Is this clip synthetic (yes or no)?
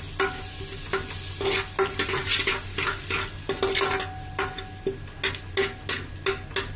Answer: no